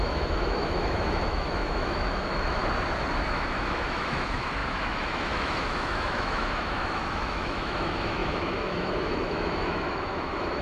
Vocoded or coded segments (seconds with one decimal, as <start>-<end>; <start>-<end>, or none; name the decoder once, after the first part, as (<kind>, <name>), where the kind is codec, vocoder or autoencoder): 0.0-2.6 (autoencoder, DAC-VAE); 3.3-10.6

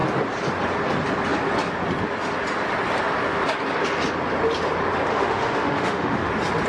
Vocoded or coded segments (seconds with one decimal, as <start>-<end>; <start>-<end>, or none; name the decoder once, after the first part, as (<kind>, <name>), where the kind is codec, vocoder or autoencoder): 5.1-6.3 (autoencoder, DAC-VAE)

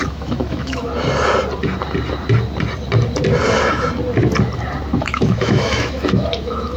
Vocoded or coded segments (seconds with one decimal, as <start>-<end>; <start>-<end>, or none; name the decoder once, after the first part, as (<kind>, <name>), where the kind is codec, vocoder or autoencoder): 0.0-0.9 (autoencoder, DAC-VAE); 5.0-6.8

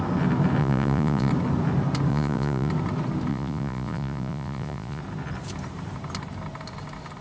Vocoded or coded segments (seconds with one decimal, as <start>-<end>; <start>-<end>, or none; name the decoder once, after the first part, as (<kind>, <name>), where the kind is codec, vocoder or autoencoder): 0.6-1.3 (vocoder, Vocos); 2.1-2.7; 3.3-5.0

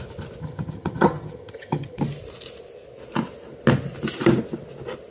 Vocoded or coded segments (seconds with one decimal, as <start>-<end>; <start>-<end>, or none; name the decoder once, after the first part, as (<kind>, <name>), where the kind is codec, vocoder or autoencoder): 0.4-2.0 (vocoder, HiFi-GAN)

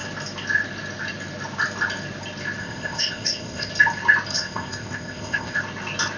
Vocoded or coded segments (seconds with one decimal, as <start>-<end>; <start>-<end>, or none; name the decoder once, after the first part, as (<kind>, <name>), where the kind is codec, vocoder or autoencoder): 2.6-3.7 (codec, ZipCodec); 4.3-5.6

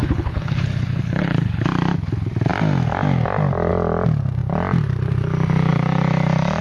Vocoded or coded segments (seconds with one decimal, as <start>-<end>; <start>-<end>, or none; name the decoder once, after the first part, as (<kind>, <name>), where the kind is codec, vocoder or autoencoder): 0.0-1.6 (codec, HILCodec)

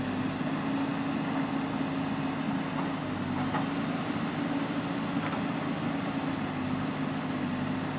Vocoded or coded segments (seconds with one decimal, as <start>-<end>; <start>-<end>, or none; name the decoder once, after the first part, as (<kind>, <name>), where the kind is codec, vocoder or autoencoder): none